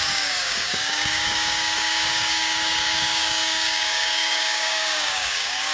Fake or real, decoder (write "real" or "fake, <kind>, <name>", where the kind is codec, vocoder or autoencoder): fake, codec, DAC